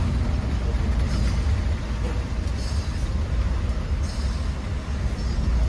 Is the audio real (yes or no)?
yes